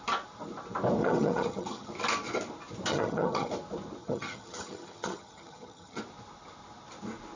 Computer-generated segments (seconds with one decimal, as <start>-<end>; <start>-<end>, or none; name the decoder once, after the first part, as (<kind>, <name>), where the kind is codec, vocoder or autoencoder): 1.0-1.9 (vocoder, HiFi-GAN); 2.9-3.5; 4.0-6.0